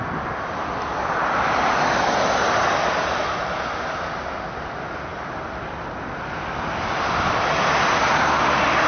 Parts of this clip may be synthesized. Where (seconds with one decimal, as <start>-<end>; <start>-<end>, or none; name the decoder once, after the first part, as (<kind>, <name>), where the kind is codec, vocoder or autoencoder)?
none

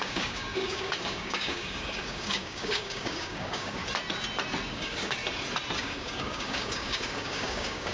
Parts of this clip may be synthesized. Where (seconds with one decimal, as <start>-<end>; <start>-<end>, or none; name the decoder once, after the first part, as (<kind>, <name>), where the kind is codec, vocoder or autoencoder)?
0.0-3.8 (codec, DAC); 4.7-5.2; 5.8-7.9

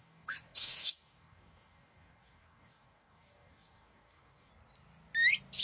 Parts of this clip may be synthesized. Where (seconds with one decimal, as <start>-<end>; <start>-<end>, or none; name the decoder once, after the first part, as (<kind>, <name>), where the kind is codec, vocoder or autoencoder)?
0.0-4.5 (codec, DAC)

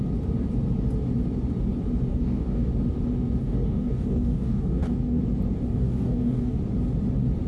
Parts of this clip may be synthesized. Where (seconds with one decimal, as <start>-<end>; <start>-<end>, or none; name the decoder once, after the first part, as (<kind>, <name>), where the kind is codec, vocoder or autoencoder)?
2.1-2.7 (codec, DAC); 3.4-5.2; 5.7-6.6

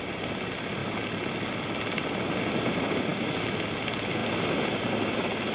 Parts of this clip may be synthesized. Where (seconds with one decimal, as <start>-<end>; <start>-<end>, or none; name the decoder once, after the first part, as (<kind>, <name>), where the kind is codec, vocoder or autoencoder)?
none

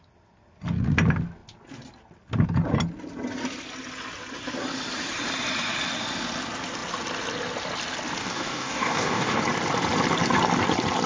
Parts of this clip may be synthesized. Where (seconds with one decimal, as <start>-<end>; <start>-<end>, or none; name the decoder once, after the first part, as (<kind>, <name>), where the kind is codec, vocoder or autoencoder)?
8.2-9.4 (codec, DAC)

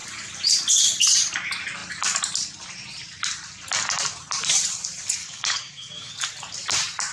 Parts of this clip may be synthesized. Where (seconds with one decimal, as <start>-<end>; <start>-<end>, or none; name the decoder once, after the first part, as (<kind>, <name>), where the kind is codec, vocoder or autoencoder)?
5.2-6.1 (codec, DAC)

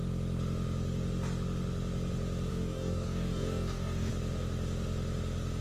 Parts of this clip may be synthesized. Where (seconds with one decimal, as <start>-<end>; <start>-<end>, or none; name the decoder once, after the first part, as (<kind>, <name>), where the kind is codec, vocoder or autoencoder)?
2.5-4.1 (codec, DAC)